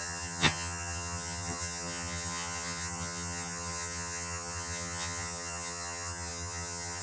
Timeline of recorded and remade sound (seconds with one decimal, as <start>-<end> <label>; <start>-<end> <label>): 0.0-7.0 remade